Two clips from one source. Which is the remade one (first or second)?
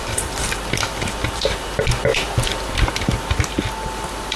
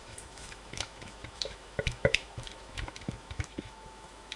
second